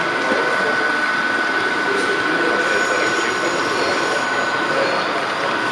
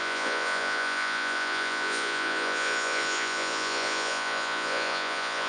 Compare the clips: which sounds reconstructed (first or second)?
second